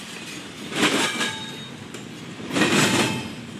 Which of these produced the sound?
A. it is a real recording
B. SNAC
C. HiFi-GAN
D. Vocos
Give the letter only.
A